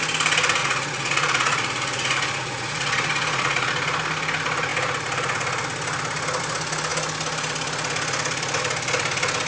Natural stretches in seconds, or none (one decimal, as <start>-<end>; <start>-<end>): 0.0-0.6; 3.7-9.5